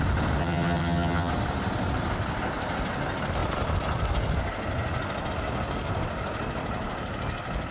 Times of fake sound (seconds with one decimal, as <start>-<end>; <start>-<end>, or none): 0.4-1.3